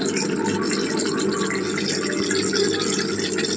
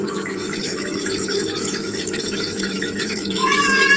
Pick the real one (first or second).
first